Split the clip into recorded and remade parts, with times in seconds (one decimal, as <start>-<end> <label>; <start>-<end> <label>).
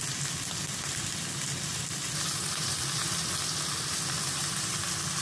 0.0-1.7 recorded; 1.7-4.8 remade; 4.8-5.2 recorded